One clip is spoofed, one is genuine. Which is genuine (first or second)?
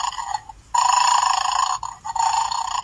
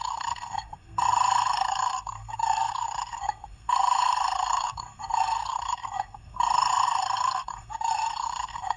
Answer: first